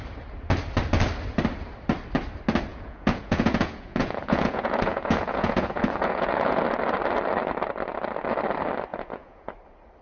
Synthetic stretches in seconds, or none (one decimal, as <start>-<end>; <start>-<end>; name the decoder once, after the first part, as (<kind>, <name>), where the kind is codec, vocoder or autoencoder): 2.7-6.6 (vocoder, Vocos); 8.9-9.5